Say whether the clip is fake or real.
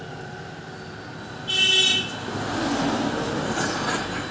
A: real